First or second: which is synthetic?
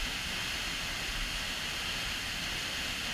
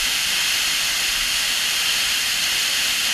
second